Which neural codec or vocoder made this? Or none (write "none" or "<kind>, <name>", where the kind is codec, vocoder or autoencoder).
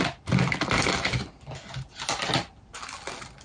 none